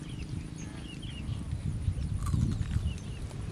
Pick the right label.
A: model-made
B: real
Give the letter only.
B